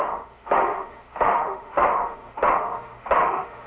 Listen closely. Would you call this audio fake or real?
fake